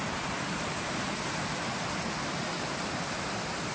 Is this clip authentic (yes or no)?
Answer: yes